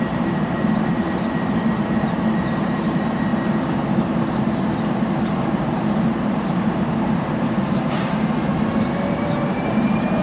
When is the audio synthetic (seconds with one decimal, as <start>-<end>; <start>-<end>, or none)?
0.0-3.3; 5.6-10.2